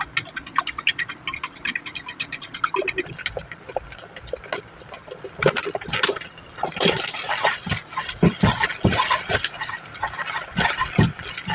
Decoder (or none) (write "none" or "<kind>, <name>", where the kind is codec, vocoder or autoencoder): none